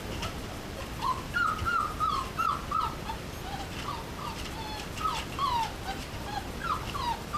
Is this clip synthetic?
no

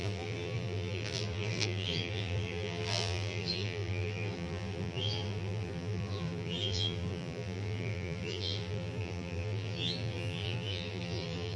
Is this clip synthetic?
yes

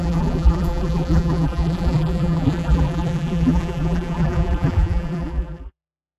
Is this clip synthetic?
yes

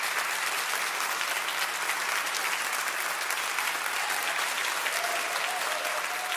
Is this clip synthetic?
no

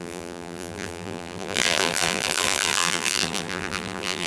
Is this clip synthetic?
yes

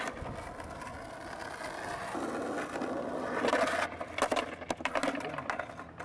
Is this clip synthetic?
no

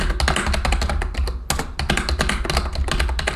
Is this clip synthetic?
no